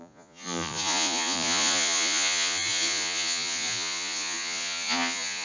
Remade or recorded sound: remade